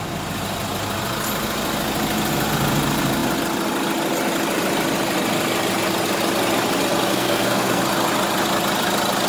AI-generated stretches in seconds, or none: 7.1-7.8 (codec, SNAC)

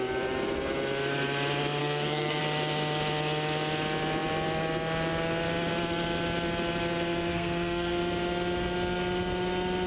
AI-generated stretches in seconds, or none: 1.8-2.4 (codec, SNAC); 7.3-8.0